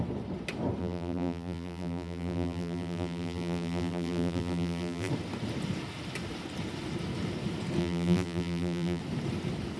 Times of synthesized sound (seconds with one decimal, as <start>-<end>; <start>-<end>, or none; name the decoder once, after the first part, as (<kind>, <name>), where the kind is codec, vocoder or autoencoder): 0.8-5.1 (vocoder, BigVGAN v2); 7.8-9.0